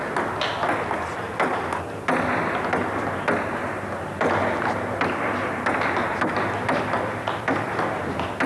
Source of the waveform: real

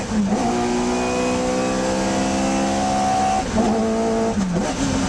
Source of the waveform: real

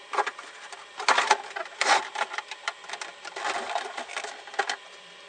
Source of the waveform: fake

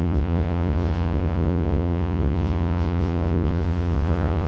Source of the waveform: fake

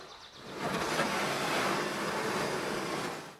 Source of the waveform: real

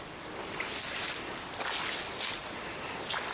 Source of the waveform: real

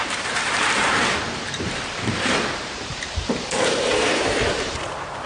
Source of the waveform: fake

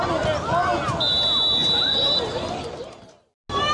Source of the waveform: real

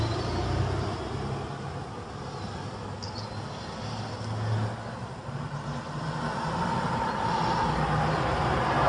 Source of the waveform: fake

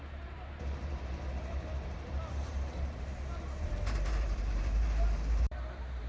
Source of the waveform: fake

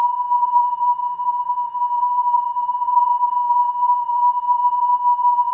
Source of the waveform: fake